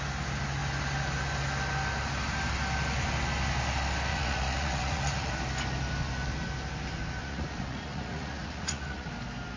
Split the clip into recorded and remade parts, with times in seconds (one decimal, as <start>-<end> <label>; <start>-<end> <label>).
0.0-4.1 recorded; 4.1-5.3 remade; 5.3-7.2 recorded; 7.2-9.1 remade; 9.1-9.6 recorded